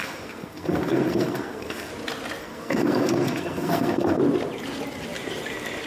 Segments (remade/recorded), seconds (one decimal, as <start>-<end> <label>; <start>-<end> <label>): 0.0-1.9 remade; 1.9-2.4 recorded; 2.4-4.2 remade; 4.2-5.9 recorded